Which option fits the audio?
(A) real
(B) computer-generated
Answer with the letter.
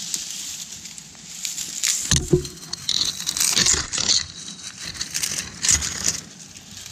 A